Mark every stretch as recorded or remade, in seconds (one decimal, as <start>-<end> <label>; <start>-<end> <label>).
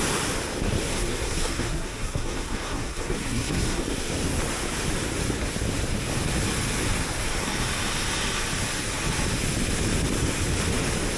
0.0-0.9 recorded; 0.9-3.8 remade; 3.8-11.2 recorded